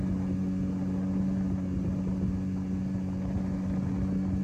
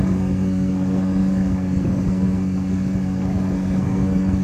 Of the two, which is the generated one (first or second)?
second